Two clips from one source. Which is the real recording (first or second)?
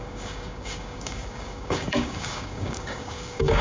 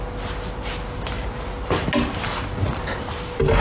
second